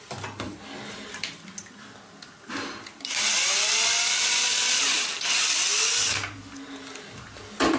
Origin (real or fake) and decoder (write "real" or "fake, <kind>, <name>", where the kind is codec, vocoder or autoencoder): real